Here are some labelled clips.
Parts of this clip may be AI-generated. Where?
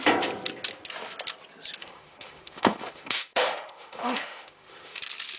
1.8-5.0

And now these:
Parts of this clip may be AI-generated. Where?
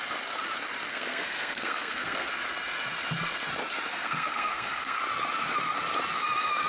0.9-2.3; 3.9-5.0